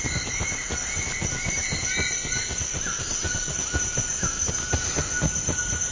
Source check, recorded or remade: recorded